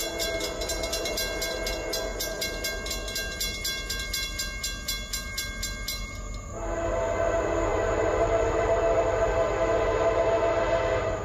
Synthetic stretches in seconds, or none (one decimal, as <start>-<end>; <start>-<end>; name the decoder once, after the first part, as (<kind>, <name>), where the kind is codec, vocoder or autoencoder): 7.7-9.0 (vocoder, BigVGAN v2)